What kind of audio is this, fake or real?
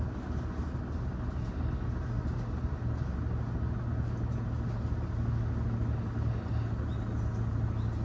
real